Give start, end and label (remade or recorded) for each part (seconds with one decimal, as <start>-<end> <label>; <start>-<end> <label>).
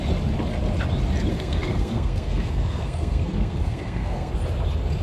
0.0-1.3 recorded; 1.3-4.3 remade; 4.3-5.0 recorded